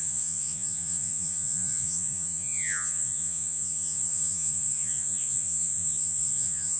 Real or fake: fake